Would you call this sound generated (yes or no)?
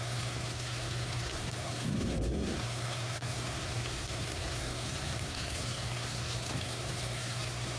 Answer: yes